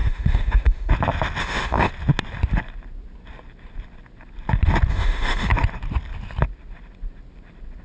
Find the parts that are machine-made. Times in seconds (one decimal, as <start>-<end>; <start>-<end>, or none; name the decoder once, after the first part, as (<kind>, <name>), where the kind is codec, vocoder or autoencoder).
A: 0.0-0.9 (autoencoder, DAC-VAE); 1.4-1.9; 4.9-5.5